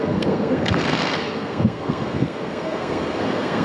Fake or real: fake